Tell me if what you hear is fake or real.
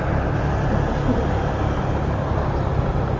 real